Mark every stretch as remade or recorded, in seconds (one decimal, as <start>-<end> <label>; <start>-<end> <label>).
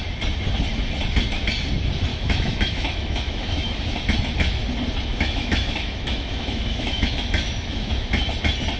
0.0-2.1 recorded; 2.1-4.0 remade; 4.0-5.1 recorded; 5.1-8.1 remade; 8.1-8.8 recorded